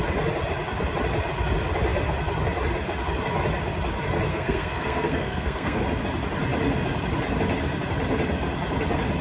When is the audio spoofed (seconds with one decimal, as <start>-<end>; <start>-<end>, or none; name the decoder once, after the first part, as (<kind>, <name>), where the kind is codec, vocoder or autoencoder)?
4.3-5.8 (codec, SNAC)